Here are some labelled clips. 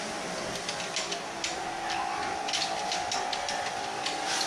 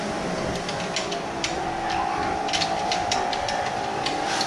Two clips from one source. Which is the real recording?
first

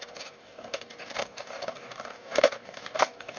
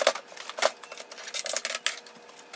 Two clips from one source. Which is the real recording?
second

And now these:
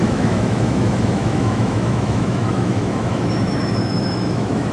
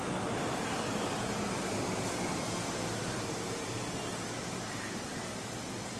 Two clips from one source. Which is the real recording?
second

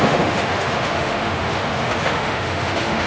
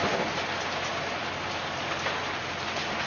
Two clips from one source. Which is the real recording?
second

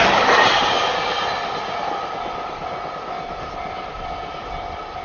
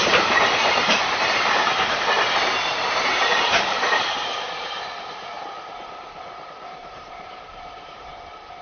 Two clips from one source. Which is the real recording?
first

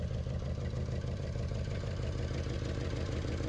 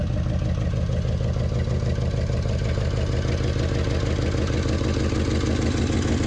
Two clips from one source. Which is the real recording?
second